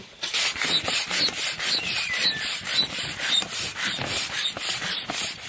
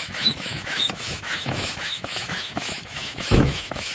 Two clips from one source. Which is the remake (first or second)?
second